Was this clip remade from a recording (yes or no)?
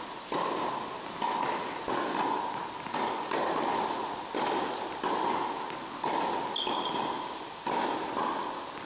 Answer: no